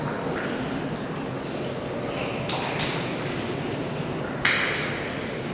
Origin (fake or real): real